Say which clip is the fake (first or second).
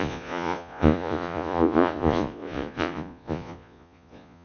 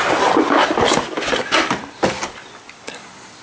first